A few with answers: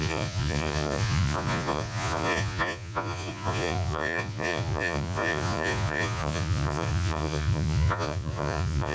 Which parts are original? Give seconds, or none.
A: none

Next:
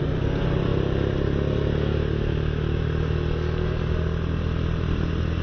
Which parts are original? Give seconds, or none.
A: 0.0-5.4